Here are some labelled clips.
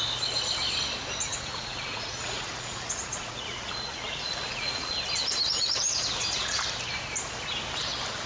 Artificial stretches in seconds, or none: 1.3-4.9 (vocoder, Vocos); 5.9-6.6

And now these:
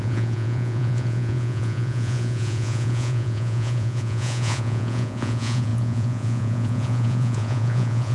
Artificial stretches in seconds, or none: 0.0-8.1 (vocoder, Vocos)

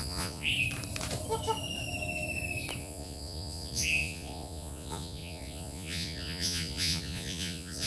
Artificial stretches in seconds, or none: 0.0-0.5 (vocoder, Vocos); 2.8-7.9

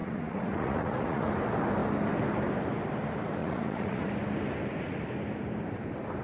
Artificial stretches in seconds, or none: 0.0-1.3 (vocoder, Vocos); 3.4-4.1

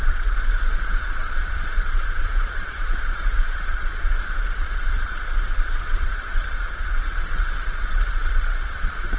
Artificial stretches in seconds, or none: 0.0-9.2 (vocoder, Vocos)

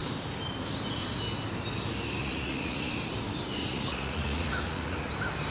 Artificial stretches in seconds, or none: 2.2-2.9 (vocoder, Vocos); 3.6-5.1